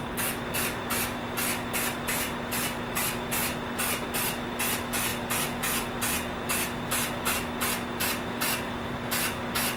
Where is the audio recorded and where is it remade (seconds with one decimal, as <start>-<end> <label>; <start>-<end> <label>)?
0.0-9.8 recorded